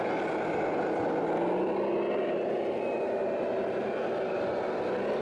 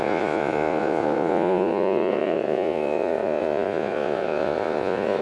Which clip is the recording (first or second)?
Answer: first